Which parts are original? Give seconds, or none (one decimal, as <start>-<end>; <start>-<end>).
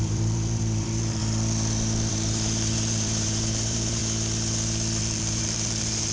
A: 1.2-2.1; 4.0-5.0